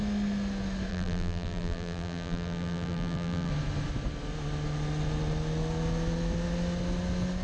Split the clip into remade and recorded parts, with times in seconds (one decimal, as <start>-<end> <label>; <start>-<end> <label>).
0.0-0.9 recorded; 0.9-3.5 remade; 3.5-7.4 recorded